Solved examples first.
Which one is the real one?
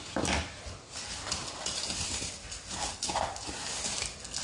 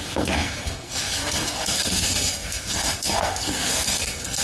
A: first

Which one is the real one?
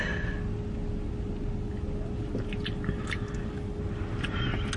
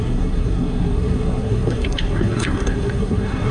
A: first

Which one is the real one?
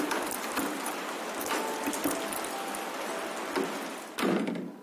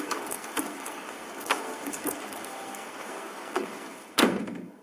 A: first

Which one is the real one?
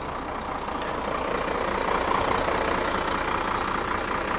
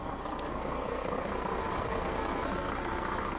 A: first